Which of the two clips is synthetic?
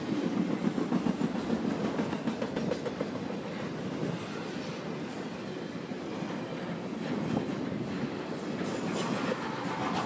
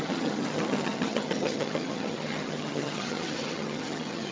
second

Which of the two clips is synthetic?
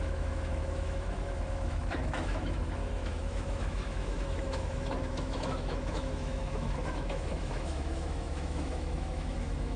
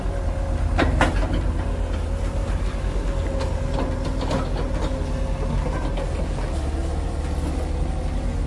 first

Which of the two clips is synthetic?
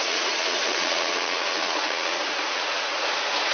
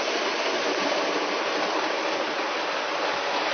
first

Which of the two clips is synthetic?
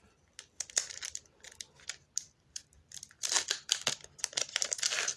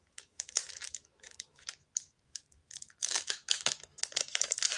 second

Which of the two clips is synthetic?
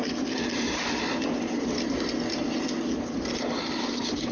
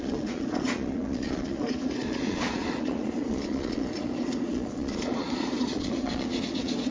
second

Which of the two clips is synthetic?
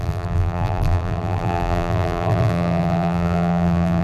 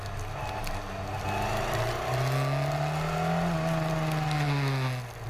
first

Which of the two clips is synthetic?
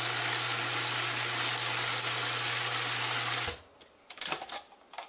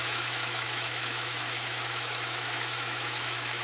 second